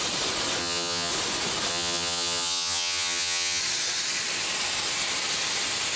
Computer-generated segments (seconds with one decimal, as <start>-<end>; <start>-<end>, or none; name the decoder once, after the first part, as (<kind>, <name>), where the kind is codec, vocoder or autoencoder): 0.6-1.1 (vocoder, HiFi-GAN); 1.7-3.6